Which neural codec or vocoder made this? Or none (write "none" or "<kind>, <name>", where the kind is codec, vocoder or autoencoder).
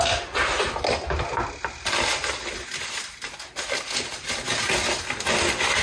none